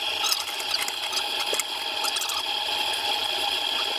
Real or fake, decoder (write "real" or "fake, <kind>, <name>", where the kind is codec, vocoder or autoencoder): real